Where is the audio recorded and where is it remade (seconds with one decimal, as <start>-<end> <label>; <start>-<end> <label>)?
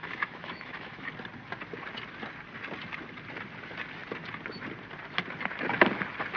0.0-1.1 remade; 1.1-6.4 recorded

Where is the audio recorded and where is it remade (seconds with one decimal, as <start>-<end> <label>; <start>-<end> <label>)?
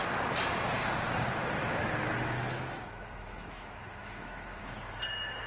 0.0-1.6 recorded; 1.6-4.6 remade; 4.6-5.5 recorded